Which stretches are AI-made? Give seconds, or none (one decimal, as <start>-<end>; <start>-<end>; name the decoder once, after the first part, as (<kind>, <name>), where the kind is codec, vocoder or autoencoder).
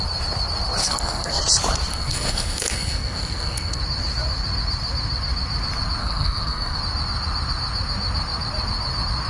0.8-1.4 (codec, SNAC); 1.9-3.8; 6.0-6.8